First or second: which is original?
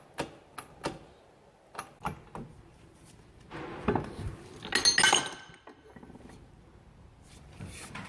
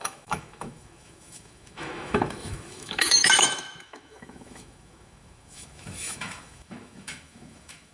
first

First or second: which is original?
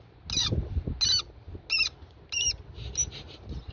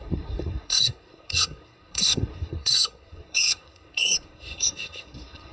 first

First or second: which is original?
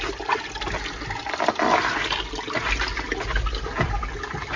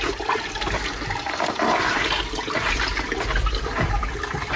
first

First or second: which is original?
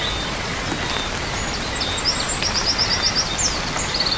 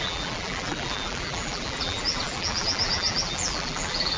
first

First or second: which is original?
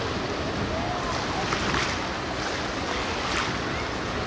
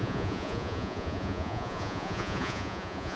first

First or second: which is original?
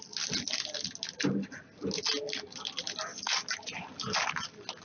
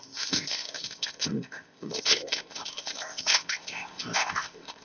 first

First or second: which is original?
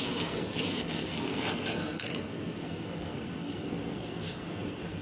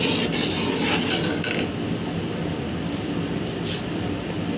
second